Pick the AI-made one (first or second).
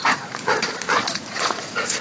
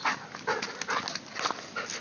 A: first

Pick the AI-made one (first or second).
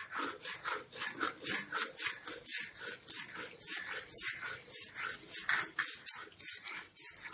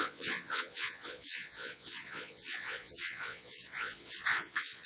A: second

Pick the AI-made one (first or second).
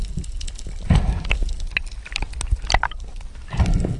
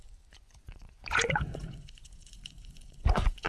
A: second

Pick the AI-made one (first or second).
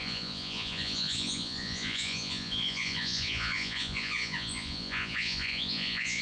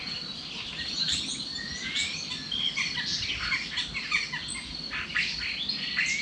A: first